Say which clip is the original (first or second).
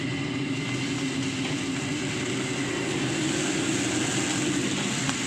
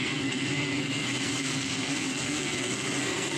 first